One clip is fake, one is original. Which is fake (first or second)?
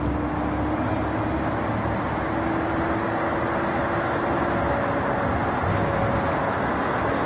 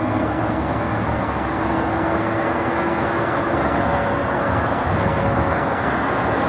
second